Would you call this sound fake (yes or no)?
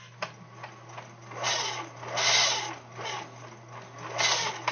no